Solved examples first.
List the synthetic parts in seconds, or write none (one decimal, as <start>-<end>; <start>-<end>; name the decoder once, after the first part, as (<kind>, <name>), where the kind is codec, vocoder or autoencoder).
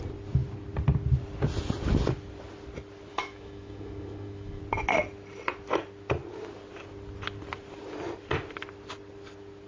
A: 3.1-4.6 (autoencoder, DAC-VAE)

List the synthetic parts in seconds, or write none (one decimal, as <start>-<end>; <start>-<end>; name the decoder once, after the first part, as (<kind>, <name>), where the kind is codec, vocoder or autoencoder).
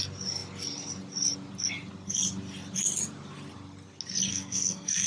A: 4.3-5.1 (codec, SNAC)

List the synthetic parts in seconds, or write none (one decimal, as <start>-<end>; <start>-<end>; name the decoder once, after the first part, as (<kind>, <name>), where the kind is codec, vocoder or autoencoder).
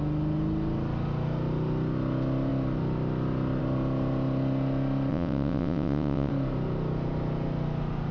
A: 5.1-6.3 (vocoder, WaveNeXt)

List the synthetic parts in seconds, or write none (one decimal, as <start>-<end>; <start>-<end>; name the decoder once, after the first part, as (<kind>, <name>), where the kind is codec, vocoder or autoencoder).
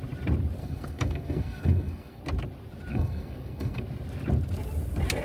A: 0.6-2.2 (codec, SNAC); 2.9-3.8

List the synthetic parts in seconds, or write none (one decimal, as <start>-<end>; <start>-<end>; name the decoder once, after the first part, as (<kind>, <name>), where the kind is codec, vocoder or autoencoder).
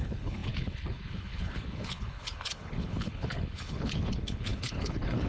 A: 0.0-5.3 (codec, HILCodec)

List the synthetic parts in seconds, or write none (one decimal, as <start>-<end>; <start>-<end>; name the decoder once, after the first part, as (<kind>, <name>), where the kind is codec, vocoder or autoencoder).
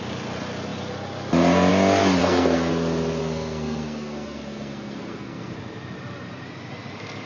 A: 2.2-2.7 (codec, SNAC); 3.2-5.5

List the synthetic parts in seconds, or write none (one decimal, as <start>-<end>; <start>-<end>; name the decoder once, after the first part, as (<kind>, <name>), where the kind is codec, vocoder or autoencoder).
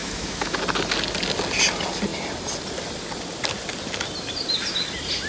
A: 0.0-0.6 (autoencoder, DAC-VAE)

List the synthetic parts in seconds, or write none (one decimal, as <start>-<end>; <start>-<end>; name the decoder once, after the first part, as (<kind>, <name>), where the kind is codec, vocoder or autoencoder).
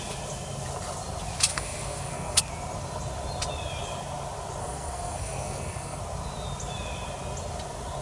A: 1.5-2.4 (codec, SNAC); 4.6-6.0